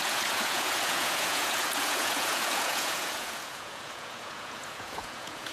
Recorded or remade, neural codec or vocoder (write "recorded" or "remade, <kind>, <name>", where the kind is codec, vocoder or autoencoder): remade, vocoder, Vocos